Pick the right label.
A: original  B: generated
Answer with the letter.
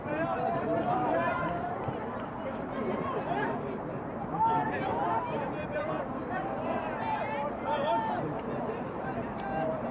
B